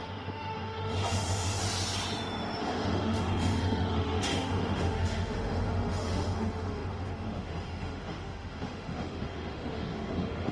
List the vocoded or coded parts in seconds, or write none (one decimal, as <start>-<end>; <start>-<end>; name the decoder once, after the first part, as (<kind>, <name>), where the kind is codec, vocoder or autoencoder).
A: 0.0-1.6 (autoencoder, DAC-VAE); 2.6-10.5